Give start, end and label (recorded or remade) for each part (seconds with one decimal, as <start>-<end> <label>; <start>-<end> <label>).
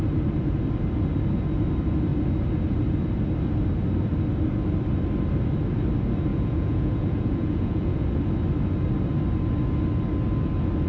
0.0-6.3 recorded; 6.3-8.2 remade; 8.2-10.9 recorded